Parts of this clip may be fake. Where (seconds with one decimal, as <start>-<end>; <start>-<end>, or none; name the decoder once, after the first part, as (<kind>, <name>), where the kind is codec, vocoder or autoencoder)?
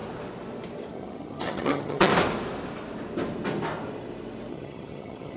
0.9-2.1 (vocoder, HiFi-GAN); 4.5-5.4